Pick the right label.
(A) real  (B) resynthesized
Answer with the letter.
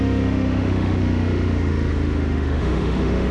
B